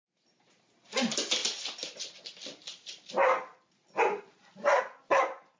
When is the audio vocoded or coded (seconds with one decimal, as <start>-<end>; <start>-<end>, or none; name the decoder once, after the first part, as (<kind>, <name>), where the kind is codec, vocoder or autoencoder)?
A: none